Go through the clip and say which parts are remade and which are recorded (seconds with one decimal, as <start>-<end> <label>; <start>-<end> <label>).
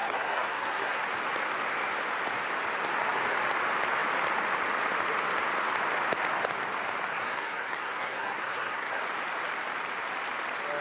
0.0-1.0 remade; 1.0-7.1 recorded; 7.1-9.0 remade; 9.0-10.8 recorded